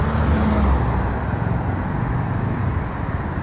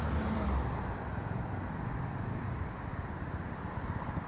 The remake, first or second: second